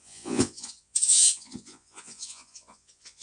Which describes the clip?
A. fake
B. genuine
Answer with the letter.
A